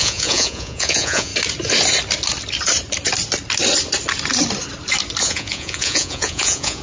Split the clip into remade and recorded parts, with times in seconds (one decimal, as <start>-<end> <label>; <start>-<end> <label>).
0.0-1.3 remade; 1.3-5.2 recorded; 5.2-6.8 remade